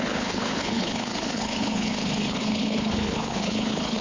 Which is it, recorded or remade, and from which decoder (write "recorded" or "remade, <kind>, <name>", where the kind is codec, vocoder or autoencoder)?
remade, codec, HILCodec